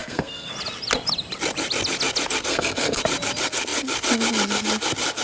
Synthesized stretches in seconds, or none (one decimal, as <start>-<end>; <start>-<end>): 0.0-0.5; 2.5-3.0